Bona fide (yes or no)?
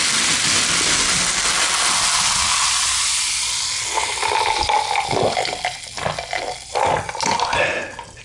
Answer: yes